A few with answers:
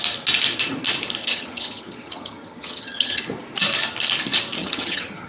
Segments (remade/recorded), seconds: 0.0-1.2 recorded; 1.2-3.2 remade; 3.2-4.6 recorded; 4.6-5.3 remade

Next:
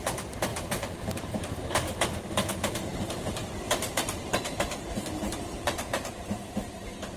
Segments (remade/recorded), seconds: 0.0-0.5 recorded; 0.5-1.5 remade; 1.5-2.9 recorded; 2.9-7.2 remade

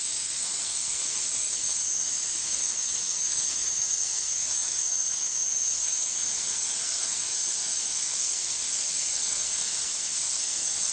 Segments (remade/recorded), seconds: 0.0-10.9 remade

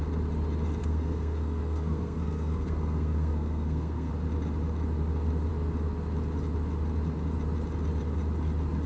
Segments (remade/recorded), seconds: 0.0-0.8 recorded; 0.8-4.1 remade; 4.1-8.9 recorded